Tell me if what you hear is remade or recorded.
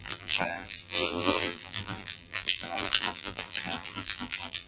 remade